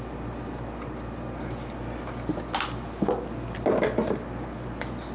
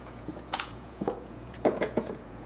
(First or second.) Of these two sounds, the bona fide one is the first